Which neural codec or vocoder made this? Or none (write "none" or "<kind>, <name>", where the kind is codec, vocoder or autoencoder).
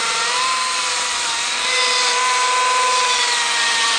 none